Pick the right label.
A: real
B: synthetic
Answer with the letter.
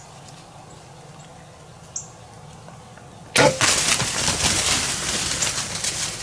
A